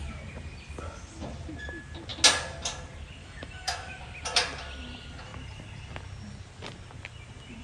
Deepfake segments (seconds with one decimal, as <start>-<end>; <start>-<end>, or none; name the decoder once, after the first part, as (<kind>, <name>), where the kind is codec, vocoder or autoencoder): 3.2-4.0 (autoencoder, DAC-VAE)